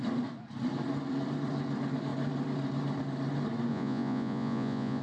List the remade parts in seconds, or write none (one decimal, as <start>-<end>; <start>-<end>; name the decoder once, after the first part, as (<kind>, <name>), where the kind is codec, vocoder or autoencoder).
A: 3.7-5.0 (vocoder, Vocos)